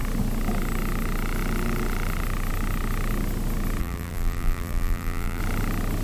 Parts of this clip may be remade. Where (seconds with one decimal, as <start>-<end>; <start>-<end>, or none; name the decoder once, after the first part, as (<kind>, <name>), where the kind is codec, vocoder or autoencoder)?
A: 3.8-5.4 (vocoder, BigVGAN v2)

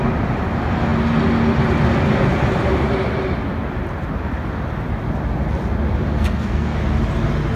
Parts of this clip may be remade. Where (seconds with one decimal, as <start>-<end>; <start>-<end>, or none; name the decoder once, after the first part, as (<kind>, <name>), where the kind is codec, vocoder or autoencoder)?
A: 6.1-6.8 (codec, SNAC)

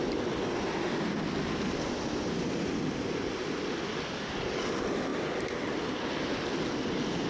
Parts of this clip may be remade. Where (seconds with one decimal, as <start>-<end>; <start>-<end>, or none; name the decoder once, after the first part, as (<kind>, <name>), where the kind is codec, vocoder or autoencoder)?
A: none

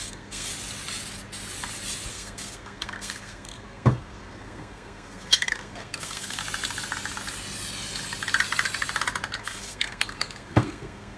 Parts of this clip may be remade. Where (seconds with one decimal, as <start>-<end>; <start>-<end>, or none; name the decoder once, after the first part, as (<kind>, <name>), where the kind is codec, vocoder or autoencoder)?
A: 0.0-0.5 (codec, SNAC); 2.1-6.4; 9.4-11.2